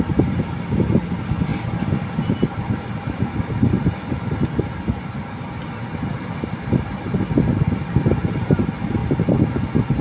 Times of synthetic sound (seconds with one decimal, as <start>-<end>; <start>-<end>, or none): none